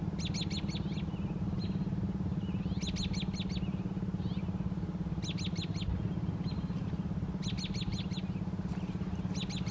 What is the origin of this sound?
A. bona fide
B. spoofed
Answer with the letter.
A